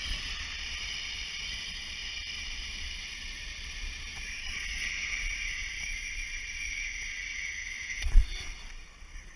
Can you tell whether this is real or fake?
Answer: fake